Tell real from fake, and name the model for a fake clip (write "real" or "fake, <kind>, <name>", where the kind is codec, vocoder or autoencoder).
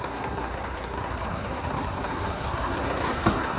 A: fake, codec, SNAC